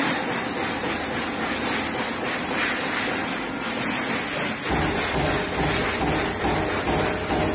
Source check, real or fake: real